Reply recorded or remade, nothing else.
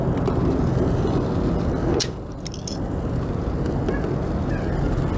recorded